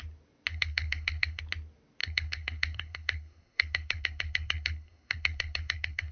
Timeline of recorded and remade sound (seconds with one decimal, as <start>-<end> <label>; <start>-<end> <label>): 0.0-0.5 recorded; 0.5-1.4 remade; 1.4-2.0 recorded; 2.0-6.1 remade